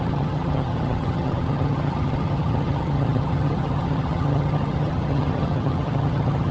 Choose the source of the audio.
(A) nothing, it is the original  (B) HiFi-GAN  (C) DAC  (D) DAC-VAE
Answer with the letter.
B